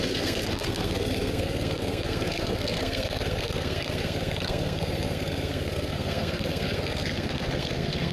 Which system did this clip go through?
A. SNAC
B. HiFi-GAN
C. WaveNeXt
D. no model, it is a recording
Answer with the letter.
A